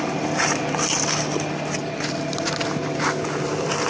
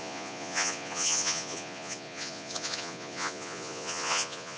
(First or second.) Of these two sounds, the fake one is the second